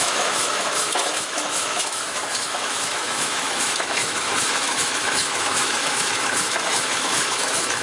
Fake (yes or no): yes